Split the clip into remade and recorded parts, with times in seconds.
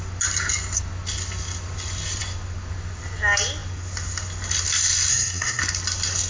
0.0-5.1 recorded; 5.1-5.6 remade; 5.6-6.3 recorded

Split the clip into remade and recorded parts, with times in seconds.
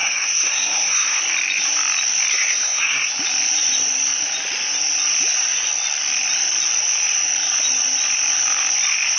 0.0-1.2 remade; 1.2-2.3 recorded; 2.3-3.1 remade; 3.1-9.2 recorded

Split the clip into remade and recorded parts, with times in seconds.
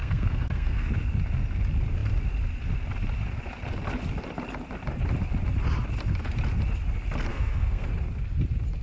0.0-0.9 remade; 0.9-7.3 recorded; 7.3-7.9 remade; 7.9-8.8 recorded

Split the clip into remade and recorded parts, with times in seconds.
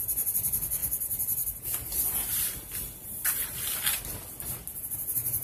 0.0-5.4 recorded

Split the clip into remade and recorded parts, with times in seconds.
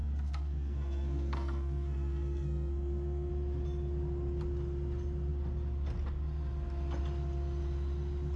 0.0-3.3 remade; 3.3-8.4 recorded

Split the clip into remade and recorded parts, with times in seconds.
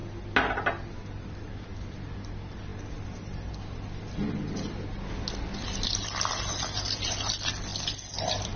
0.0-8.6 recorded